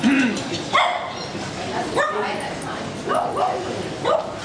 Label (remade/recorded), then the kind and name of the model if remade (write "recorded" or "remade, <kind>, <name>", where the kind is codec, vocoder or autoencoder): recorded